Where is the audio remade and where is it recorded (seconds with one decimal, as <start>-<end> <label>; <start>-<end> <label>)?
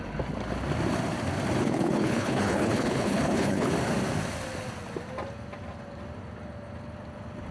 0.0-1.6 recorded; 1.6-3.7 remade; 3.7-7.5 recorded